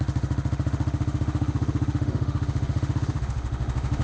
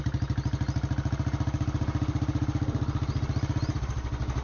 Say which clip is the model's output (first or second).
first